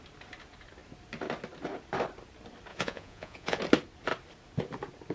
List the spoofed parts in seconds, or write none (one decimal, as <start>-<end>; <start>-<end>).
2.7-3.6